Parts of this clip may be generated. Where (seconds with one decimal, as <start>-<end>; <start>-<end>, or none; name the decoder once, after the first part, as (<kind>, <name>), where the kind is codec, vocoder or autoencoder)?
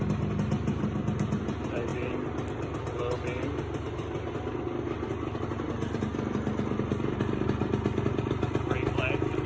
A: none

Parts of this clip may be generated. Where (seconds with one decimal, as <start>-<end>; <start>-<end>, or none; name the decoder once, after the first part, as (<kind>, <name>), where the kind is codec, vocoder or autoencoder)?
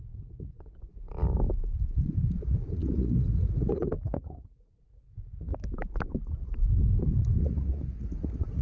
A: 0.0-0.9 (vocoder, Vocos); 2.3-5.5; 7.4-8.6